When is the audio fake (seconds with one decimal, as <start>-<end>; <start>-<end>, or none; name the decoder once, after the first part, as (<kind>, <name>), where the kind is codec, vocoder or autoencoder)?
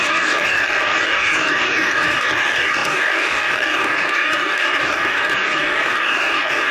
0.0-6.7 (codec, DAC)